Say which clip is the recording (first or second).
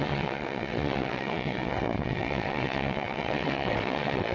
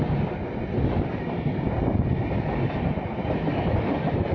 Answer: second